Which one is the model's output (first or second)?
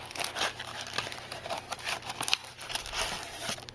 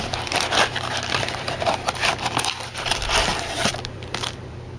second